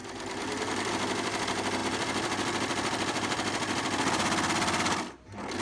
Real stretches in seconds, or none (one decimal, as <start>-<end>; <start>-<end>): 0.0-5.6